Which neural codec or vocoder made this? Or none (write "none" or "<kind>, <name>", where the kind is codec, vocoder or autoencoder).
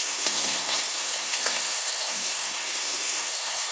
codec, SNAC